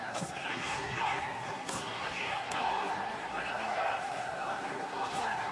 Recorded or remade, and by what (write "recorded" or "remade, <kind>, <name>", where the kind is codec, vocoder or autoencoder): remade, codec, SNAC